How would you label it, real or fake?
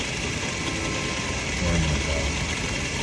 real